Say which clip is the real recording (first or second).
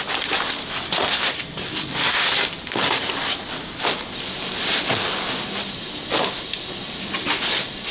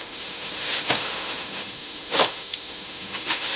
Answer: first